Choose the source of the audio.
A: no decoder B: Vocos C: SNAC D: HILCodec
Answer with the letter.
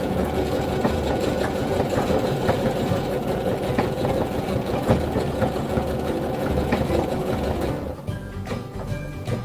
B